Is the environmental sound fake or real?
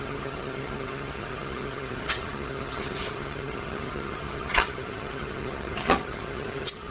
fake